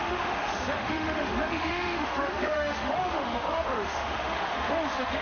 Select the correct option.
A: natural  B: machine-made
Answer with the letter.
B